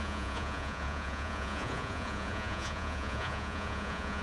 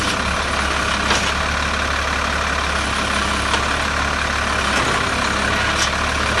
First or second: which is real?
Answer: second